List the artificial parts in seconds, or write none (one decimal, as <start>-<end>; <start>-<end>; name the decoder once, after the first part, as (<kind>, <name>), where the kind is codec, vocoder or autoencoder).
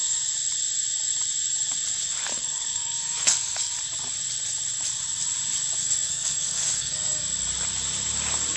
2.2-3.7 (codec, SNAC); 5.8-7.2